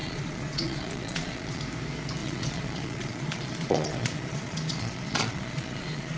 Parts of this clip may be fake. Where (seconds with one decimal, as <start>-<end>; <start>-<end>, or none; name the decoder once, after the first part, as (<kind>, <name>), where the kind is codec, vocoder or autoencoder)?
0.0-1.6 (vocoder, Vocos); 2.2-6.2